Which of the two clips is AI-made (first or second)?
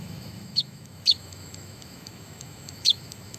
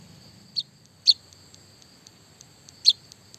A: first